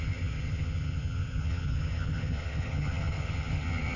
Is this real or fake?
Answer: fake